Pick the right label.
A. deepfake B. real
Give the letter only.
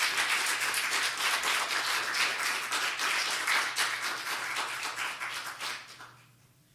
B